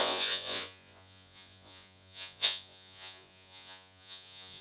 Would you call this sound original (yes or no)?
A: no